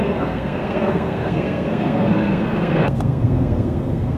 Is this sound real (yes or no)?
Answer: no